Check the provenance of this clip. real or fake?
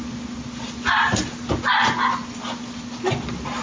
real